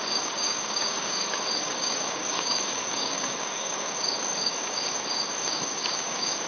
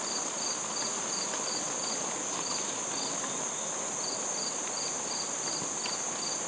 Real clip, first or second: second